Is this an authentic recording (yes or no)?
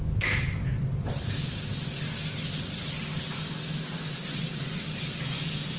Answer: yes